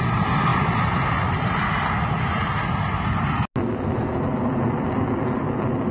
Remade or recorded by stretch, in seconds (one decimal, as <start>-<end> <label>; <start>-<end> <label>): 0.0-5.9 recorded